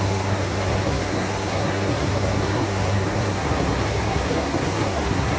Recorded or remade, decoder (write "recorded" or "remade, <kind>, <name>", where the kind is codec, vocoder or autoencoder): remade, codec, SNAC